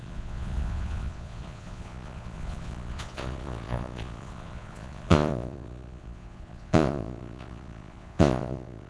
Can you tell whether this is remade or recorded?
remade